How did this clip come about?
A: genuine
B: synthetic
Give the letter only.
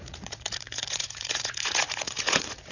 B